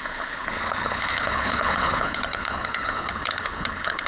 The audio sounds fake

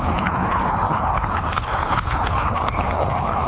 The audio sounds fake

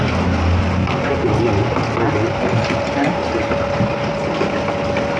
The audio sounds real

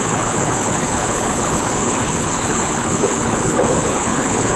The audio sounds fake